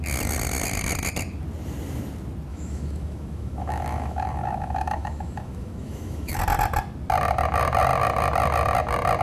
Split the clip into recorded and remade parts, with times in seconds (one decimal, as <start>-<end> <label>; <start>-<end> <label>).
0.0-2.5 recorded; 2.5-6.4 remade; 6.4-9.2 recorded